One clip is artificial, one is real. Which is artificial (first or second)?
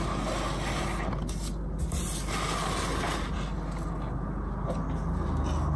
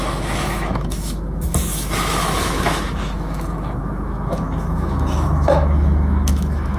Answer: second